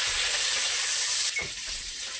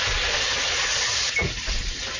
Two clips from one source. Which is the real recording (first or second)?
second